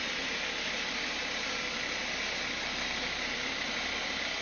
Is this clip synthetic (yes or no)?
no